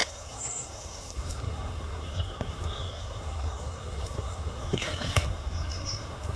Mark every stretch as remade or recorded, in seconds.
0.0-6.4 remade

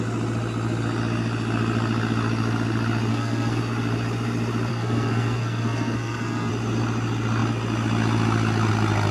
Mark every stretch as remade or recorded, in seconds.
0.0-3.1 recorded; 3.1-3.6 remade; 3.6-4.7 recorded; 4.7-6.5 remade; 6.5-9.1 recorded

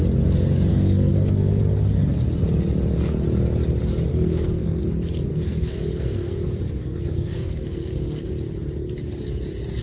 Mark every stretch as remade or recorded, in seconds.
0.0-0.7 recorded; 0.7-1.6 remade; 1.6-4.1 recorded; 4.1-4.8 remade; 4.8-5.3 recorded; 5.3-8.3 remade; 8.3-9.8 recorded

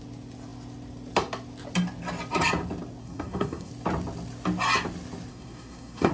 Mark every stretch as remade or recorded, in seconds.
0.0-3.0 recorded; 3.0-3.7 remade; 3.7-5.3 recorded; 5.3-6.1 remade